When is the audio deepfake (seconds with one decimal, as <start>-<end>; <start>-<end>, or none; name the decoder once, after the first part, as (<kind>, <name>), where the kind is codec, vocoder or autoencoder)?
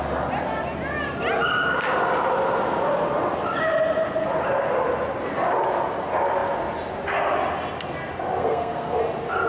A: 8.4-9.0 (codec, SNAC)